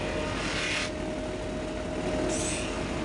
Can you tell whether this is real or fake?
real